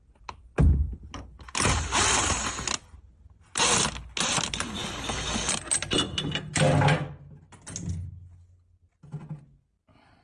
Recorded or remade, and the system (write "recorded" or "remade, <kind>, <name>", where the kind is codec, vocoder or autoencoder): recorded